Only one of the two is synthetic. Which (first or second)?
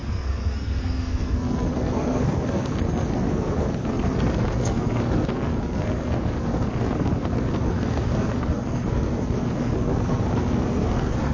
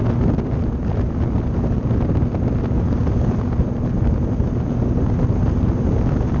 first